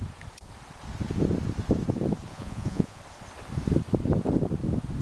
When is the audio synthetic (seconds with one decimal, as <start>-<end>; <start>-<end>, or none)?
2.3-3.0